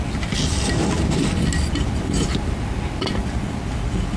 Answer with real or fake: real